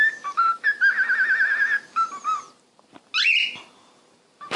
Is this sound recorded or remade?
recorded